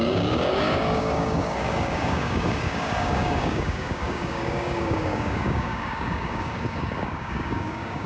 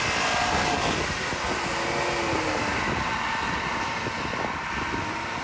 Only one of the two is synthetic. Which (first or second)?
first